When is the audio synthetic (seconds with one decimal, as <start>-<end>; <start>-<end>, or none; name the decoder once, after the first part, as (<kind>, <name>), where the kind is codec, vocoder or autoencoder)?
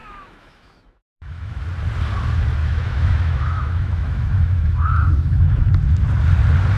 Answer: 0.0-1.6 (autoencoder, DAC-VAE); 2.6-5.7